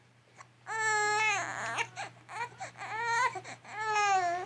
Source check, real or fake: real